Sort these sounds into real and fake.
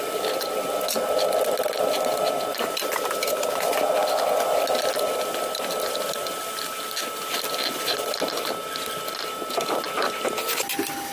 real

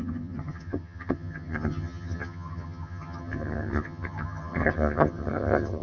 fake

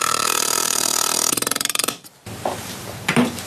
real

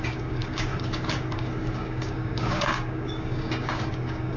fake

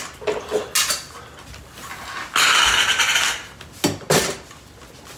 real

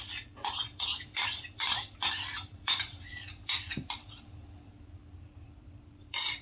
fake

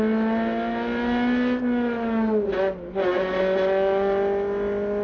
real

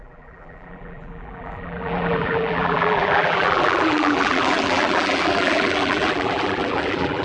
fake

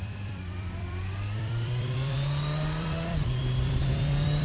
fake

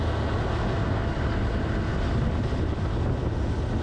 real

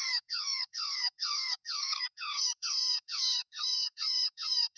fake